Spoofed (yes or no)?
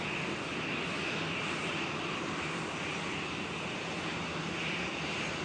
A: no